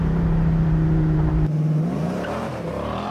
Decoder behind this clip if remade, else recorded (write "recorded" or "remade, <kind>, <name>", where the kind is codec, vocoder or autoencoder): remade, vocoder, BigVGAN v2